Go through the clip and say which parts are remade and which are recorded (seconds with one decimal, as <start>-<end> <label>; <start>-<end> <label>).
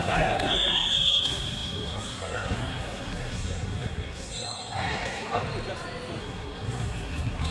0.0-5.4 remade; 5.4-6.2 recorded; 6.2-7.5 remade